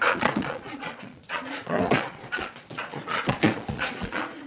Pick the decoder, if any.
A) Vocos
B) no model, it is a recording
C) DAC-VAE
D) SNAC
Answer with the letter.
A